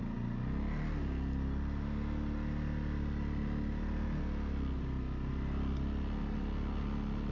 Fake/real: real